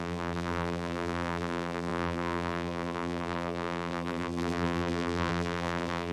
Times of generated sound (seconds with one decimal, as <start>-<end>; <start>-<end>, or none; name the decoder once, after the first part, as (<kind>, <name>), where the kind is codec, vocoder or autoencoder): 0.0-6.1 (vocoder, BigVGAN v2)